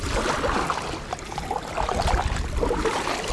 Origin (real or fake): real